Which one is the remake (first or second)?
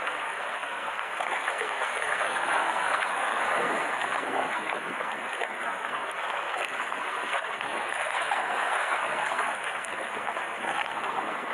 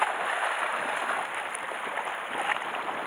first